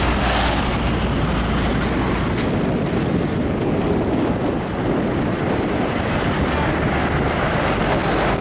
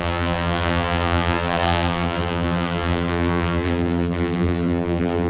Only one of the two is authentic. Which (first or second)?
first